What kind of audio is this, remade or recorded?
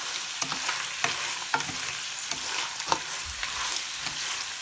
recorded